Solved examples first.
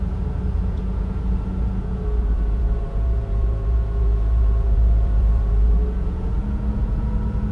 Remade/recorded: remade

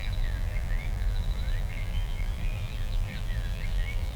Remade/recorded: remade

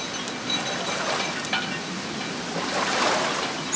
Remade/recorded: recorded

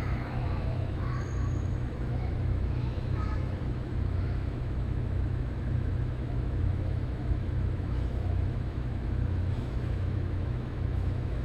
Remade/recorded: remade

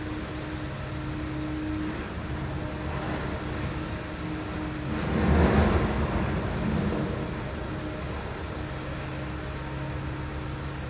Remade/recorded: recorded